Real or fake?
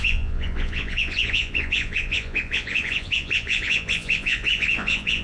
fake